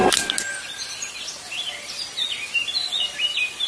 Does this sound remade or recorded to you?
recorded